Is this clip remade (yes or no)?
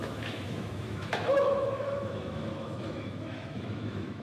yes